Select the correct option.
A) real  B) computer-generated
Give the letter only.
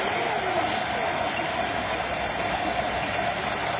A